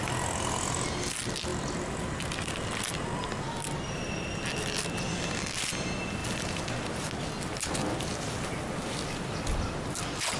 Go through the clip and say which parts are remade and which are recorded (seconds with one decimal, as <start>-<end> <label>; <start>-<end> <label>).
0.0-10.4 recorded